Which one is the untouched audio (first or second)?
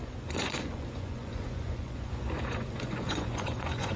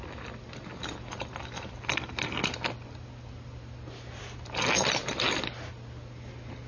second